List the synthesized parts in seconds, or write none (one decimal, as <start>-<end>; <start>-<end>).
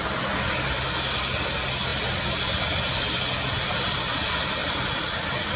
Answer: none